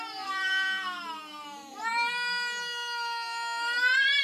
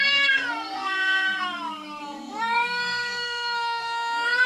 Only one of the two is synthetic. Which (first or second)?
second